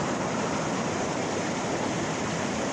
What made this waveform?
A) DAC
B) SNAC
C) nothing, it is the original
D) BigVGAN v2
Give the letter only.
C